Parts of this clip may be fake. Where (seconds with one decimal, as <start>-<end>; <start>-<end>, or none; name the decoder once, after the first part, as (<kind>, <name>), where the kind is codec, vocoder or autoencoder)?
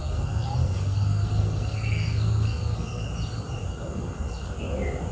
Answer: 0.0-3.1 (codec, SNAC); 3.7-4.5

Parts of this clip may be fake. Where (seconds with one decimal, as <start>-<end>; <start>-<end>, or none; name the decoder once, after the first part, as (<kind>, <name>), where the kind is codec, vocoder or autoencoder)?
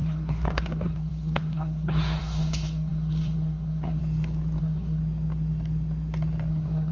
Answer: 0.0-4.0 (codec, SNAC); 4.6-5.0; 6.5-6.9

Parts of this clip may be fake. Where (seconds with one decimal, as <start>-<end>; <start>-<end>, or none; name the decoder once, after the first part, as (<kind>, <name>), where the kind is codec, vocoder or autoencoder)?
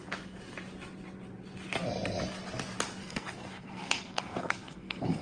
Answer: 3.0-5.2 (codec, SNAC)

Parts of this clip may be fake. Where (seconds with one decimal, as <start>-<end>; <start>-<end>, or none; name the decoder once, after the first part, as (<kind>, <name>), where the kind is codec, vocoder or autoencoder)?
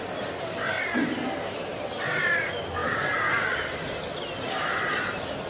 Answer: none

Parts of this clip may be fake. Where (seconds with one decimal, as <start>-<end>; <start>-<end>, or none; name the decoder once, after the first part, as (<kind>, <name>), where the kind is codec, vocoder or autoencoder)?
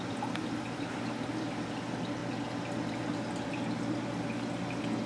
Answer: none